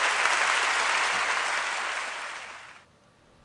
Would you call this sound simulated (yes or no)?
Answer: no